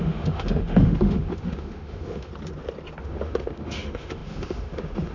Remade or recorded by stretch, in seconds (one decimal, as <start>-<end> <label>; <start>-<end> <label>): 0.0-2.3 remade; 2.3-3.0 recorded; 3.0-5.1 remade